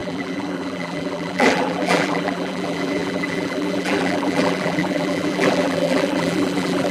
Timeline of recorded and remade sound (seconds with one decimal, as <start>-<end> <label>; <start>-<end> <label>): 0.0-6.9 remade